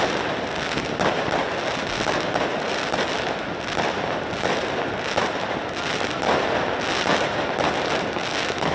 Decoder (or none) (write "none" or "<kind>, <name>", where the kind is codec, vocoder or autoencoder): none